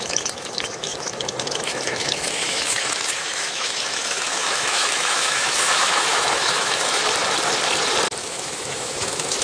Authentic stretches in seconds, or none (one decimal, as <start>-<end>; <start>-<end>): 7.0-8.2